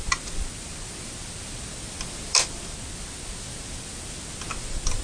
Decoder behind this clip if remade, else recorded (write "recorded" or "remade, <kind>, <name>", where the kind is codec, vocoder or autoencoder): recorded